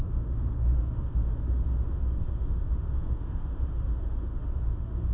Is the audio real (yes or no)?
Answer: no